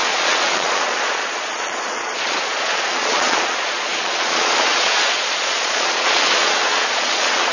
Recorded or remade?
remade